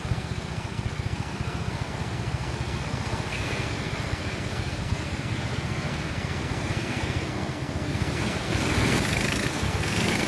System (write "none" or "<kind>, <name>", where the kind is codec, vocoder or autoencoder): codec, SNAC